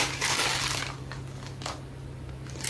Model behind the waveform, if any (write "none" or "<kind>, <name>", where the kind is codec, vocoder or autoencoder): vocoder, BigVGAN v2